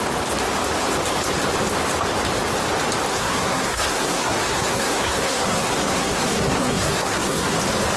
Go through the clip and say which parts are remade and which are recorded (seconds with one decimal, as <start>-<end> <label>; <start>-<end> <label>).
0.0-3.1 recorded; 3.1-7.6 remade; 7.6-8.0 recorded